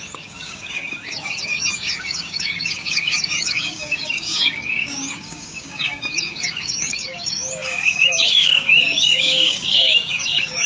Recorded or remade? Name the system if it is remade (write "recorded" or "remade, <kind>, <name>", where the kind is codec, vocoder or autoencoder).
remade, codec, DAC